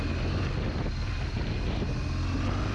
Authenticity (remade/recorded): recorded